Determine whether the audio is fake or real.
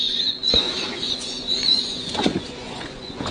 fake